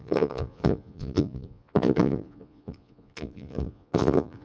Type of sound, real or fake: fake